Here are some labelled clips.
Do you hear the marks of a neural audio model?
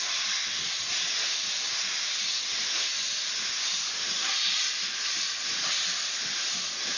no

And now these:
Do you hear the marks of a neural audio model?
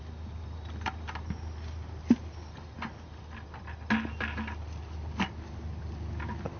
no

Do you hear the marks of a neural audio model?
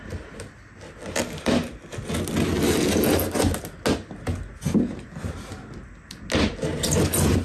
no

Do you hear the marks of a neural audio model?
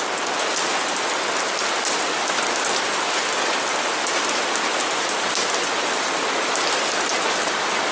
no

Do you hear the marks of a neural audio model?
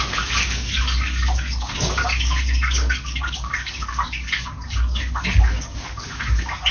yes